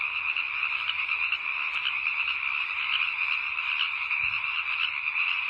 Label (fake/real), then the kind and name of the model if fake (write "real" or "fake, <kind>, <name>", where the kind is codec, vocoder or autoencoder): real